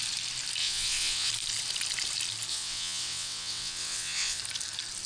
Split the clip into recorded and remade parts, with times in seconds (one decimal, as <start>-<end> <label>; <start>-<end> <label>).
0.0-0.6 recorded; 0.6-1.3 remade; 1.3-2.5 recorded; 2.5-4.4 remade; 4.4-5.1 recorded